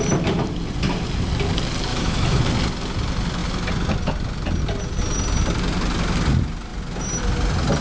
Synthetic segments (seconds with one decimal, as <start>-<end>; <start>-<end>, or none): 1.9-2.4

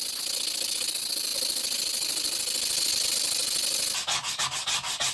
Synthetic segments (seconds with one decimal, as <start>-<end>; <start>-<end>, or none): none

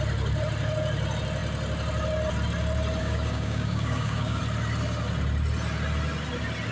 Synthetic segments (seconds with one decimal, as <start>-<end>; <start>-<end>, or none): 3.0-4.4

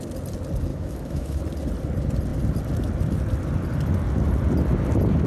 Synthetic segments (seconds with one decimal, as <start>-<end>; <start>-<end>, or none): 0.7-1.4

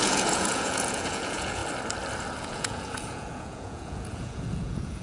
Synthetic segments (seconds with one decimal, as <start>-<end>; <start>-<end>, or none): 0.0-1.6; 2.4-5.0

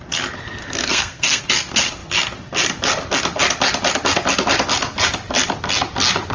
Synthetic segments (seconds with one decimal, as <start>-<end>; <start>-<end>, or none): 0.6-1.4

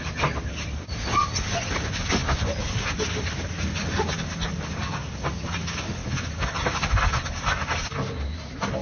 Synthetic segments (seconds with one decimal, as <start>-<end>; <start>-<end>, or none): none

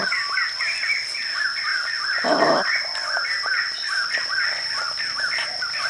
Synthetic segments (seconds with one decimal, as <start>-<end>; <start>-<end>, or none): none